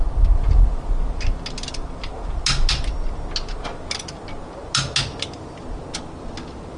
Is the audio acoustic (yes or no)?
yes